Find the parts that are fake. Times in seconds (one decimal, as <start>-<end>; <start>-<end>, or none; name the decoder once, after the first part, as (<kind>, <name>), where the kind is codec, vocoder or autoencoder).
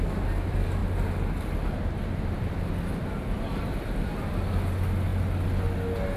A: none